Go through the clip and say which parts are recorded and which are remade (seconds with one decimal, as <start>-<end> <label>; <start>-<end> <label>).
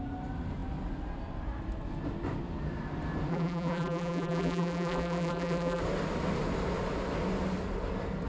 0.0-3.3 recorded; 3.3-5.8 remade; 5.8-8.3 recorded